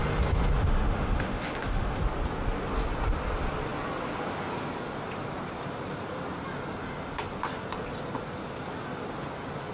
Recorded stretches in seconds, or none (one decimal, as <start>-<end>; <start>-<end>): 0.0-0.6; 2.0-9.7